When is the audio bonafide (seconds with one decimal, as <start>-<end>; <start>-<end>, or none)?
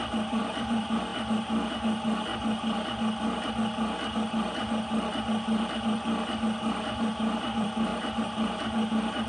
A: 2.3-4.3; 7.9-8.9